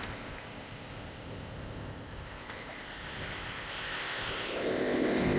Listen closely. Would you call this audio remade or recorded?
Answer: remade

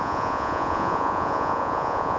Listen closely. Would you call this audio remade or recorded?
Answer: remade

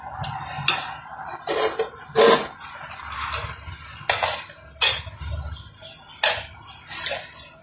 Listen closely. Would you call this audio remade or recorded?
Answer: recorded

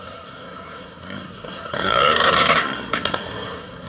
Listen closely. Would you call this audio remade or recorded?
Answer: remade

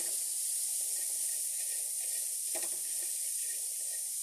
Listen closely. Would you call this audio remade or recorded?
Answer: recorded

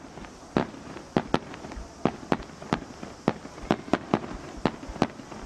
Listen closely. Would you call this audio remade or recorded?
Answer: recorded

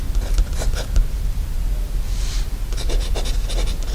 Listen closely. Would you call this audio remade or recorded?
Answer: recorded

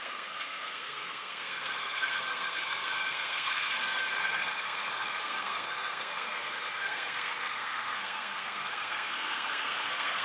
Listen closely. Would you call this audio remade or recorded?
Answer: remade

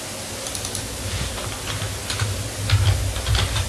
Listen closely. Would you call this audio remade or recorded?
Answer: recorded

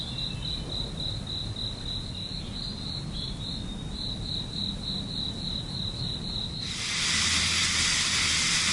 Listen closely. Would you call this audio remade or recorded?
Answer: recorded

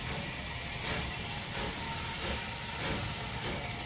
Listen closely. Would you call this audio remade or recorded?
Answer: recorded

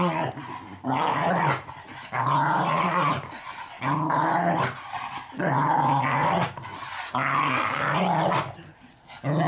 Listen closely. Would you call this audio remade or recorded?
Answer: recorded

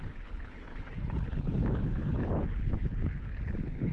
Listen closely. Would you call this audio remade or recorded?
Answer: remade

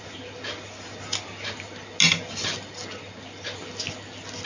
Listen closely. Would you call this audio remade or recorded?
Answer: recorded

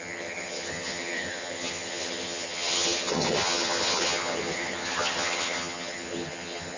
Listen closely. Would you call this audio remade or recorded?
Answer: remade